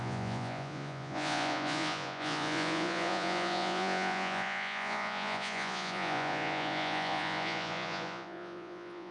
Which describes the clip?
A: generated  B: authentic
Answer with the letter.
A